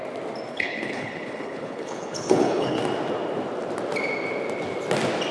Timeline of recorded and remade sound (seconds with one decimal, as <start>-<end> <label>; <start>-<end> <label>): 0.0-0.5 recorded; 0.5-2.8 remade; 2.8-5.3 recorded